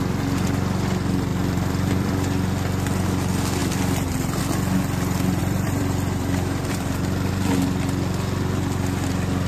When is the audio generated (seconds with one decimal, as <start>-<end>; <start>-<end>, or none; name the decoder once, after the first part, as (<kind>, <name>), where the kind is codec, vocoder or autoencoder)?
1.3-2.1 (vocoder, BigVGAN v2); 3.6-4.4; 5.4-7.3